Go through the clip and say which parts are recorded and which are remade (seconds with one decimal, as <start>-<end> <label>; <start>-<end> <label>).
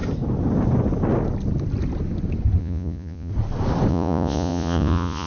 0.0-2.6 recorded; 2.6-3.3 remade; 3.3-3.9 recorded; 3.9-5.3 remade